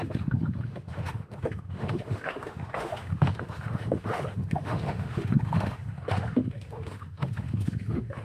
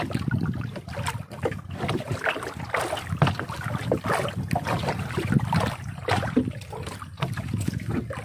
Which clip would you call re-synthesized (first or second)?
first